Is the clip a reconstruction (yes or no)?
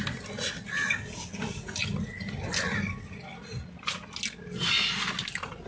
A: no